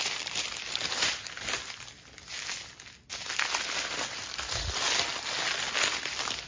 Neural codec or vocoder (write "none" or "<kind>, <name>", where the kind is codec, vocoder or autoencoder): none